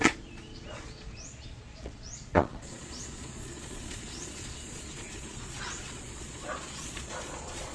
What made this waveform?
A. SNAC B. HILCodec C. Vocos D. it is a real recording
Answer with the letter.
C